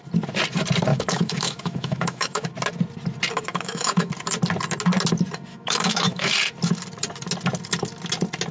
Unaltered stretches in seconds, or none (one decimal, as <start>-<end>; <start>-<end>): 0.0-0.9; 2.5-3.5; 4.1-5.5; 6.3-8.5